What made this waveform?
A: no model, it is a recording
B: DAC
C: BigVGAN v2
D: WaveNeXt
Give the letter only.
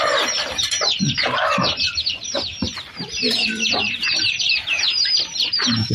C